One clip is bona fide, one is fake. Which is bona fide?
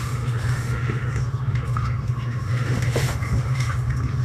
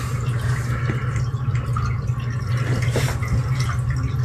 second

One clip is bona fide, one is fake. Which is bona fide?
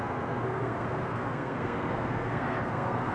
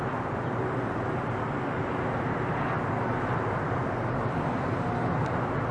second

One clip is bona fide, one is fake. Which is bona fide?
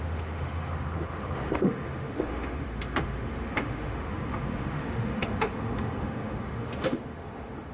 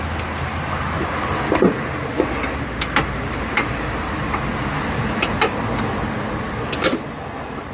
second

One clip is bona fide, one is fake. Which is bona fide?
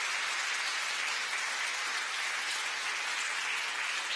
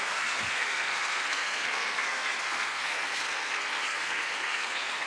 first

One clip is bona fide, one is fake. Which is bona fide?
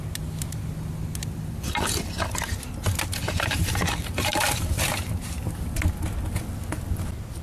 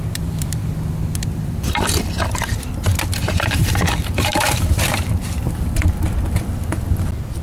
first